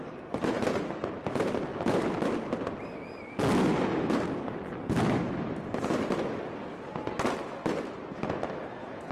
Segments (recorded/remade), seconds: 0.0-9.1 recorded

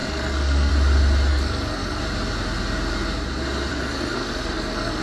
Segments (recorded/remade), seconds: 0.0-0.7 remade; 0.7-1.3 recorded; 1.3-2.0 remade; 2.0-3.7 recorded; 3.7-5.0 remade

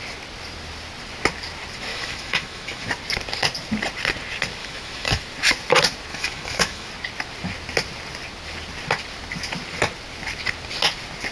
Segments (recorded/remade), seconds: 0.0-1.9 recorded; 1.9-2.9 remade; 2.9-4.6 recorded; 4.6-5.2 remade; 5.2-6.1 recorded; 6.1-6.9 remade; 6.9-11.3 recorded

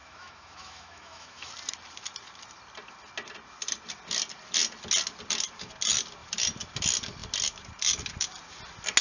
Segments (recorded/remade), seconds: 0.0-1.5 remade; 1.5-9.0 recorded